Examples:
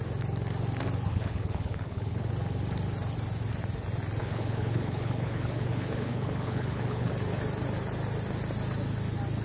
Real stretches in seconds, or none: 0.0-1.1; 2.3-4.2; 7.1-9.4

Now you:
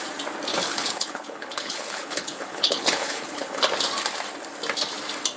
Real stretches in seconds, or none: 0.0-0.5; 3.7-5.4

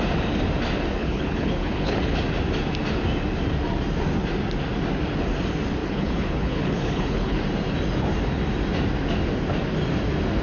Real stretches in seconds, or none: 0.0-1.0; 2.0-5.8; 7.4-10.4

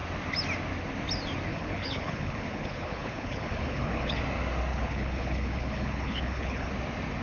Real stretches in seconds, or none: 0.0-1.5; 4.2-4.7; 6.7-7.2

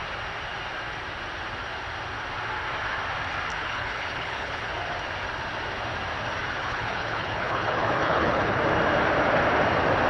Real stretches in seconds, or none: 0.0-3.5; 4.7-6.6; 8.6-10.1

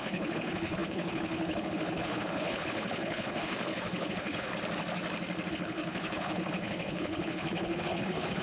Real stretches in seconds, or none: 4.5-5.5

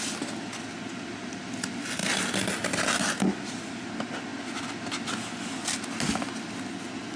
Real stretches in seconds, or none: 0.0-7.2